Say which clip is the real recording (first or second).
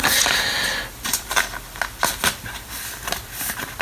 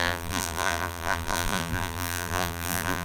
first